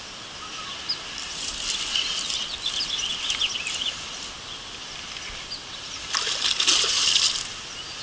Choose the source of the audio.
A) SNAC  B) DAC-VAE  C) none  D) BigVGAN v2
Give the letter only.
C